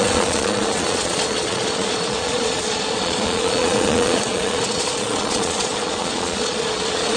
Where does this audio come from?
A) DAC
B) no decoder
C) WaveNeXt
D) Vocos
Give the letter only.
D